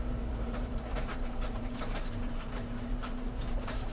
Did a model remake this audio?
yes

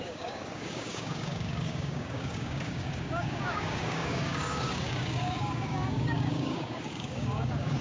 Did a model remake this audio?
yes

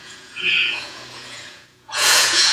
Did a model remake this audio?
yes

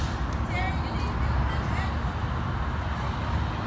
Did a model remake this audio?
no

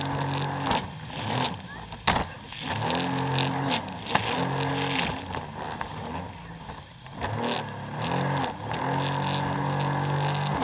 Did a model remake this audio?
no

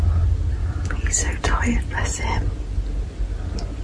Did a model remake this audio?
no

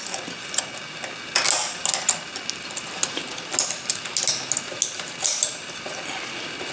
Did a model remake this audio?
no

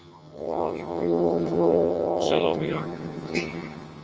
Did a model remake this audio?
yes